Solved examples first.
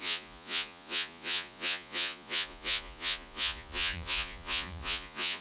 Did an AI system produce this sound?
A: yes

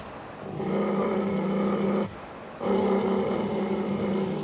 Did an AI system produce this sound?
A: no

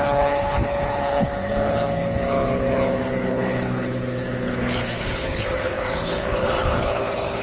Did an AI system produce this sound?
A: yes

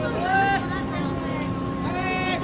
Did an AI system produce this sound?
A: no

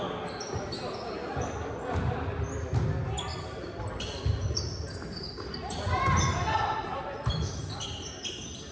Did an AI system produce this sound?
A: no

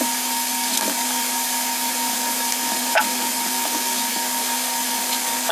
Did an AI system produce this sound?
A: yes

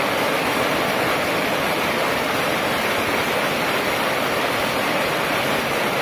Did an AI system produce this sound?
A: no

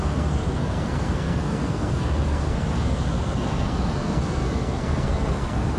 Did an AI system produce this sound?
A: yes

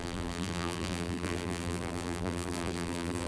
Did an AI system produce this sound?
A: yes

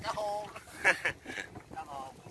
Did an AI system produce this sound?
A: no